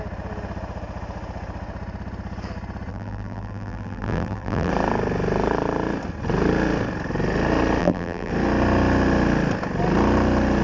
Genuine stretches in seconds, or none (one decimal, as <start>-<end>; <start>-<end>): 0.0-2.9; 4.7-7.8; 8.3-10.6